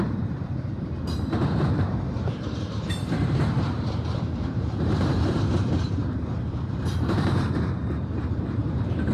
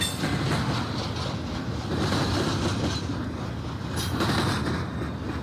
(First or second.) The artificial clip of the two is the first